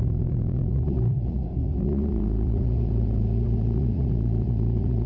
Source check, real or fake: fake